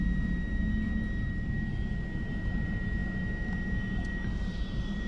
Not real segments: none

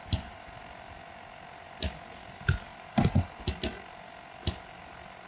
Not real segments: 0.0-0.6 (vocoder, BigVGAN v2); 2.7-3.4